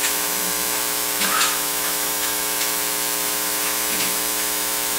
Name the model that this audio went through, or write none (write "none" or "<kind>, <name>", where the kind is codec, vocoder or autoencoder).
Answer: autoencoder, DAC-VAE